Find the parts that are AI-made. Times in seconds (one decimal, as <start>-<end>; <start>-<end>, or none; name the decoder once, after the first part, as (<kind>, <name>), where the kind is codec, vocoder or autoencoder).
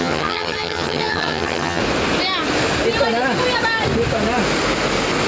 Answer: 0.0-1.8 (vocoder, HiFi-GAN)